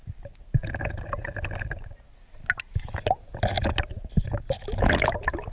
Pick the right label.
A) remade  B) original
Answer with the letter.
B